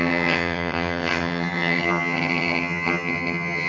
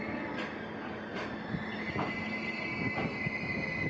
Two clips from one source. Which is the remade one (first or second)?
first